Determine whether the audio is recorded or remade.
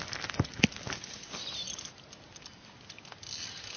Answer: recorded